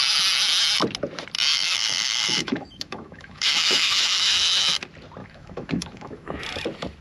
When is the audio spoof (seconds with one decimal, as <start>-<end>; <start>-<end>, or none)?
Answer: 1.5-4.8; 5.2-6.4